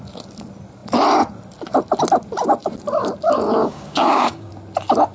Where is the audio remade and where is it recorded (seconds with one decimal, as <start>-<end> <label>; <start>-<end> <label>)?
0.0-3.6 recorded; 3.6-4.5 remade; 4.5-5.1 recorded

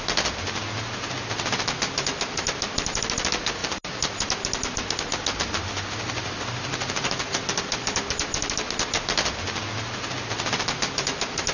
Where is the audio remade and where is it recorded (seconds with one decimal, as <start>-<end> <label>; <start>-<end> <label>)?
0.0-11.5 recorded

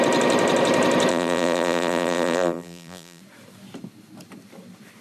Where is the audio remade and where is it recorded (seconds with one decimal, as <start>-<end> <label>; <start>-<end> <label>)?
0.0-1.1 recorded; 1.1-3.2 remade; 3.2-5.0 recorded

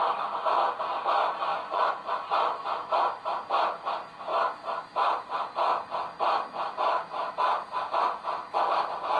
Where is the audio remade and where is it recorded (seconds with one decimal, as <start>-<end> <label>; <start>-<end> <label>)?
0.0-1.5 recorded; 1.5-2.1 remade; 2.1-9.2 recorded

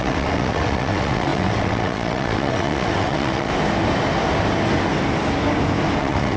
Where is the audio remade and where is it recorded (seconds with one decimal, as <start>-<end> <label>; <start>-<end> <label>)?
0.0-3.5 remade; 3.5-6.0 recorded; 6.0-6.4 remade